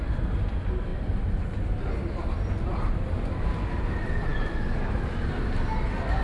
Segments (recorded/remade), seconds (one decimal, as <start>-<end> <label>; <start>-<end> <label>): 0.0-6.2 recorded